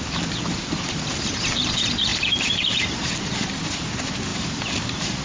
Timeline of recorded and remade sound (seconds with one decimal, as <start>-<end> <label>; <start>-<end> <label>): 0.0-4.3 recorded; 4.3-5.2 remade